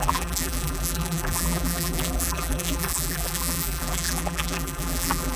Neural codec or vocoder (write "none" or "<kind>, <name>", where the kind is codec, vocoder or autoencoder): vocoder, BigVGAN v2